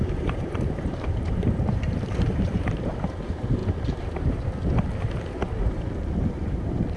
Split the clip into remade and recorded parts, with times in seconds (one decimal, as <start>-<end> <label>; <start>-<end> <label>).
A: 0.0-3.6 remade; 3.6-5.5 recorded; 5.5-7.0 remade